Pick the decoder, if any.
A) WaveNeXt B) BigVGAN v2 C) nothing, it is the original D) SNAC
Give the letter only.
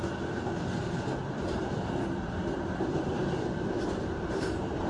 B